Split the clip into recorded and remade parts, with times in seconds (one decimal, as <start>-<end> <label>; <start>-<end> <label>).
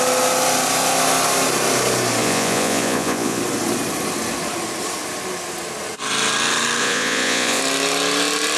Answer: 0.0-2.2 recorded; 2.2-3.4 remade; 3.4-6.8 recorded; 6.8-7.6 remade; 7.6-8.6 recorded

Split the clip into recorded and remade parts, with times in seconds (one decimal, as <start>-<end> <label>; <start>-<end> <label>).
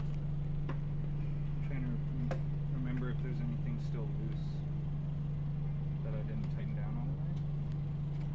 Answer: 0.0-8.3 recorded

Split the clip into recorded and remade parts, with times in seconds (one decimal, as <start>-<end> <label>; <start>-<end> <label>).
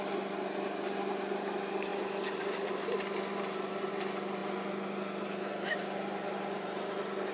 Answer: 0.0-7.3 recorded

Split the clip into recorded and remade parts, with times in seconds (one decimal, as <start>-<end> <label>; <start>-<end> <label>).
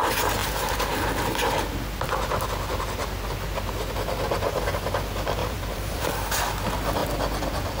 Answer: 0.0-5.4 recorded; 5.4-6.1 remade; 6.1-7.8 recorded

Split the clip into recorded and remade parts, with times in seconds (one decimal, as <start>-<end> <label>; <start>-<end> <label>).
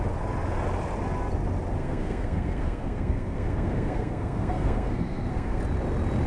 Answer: 0.0-1.8 recorded; 1.8-5.6 remade; 5.6-6.3 recorded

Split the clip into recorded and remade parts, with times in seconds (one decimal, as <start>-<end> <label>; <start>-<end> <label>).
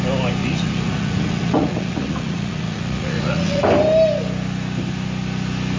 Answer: 0.0-0.4 recorded; 0.4-3.6 remade; 3.6-5.8 recorded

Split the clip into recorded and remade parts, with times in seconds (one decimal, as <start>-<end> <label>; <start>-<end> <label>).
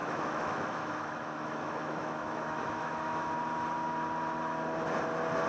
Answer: 0.0-3.3 remade; 3.3-5.5 recorded